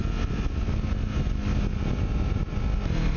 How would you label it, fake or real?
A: real